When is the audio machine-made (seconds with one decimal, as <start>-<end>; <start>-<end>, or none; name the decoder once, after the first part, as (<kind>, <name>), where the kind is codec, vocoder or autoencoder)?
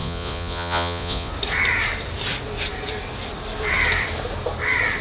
0.0-1.3 (vocoder, Vocos)